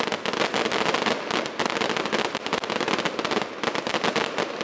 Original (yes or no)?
yes